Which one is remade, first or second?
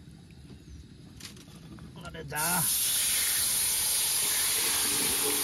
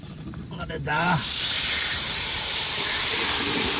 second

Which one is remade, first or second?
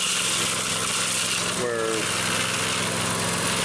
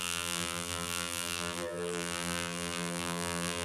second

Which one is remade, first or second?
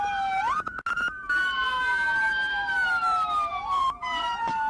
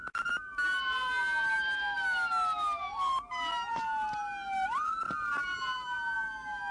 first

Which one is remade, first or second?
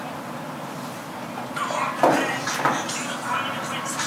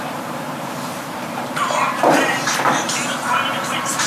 second